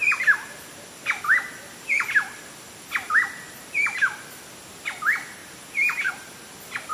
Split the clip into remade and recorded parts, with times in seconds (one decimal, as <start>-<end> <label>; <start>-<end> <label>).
0.0-3.0 recorded; 3.0-4.2 remade; 4.2-5.4 recorded; 5.4-6.1 remade; 6.1-6.9 recorded